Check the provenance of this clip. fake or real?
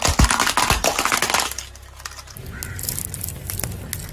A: real